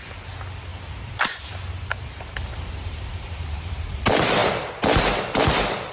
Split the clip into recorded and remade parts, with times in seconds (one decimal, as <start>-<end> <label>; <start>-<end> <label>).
0.0-0.7 recorded; 0.7-4.0 remade; 4.0-5.9 recorded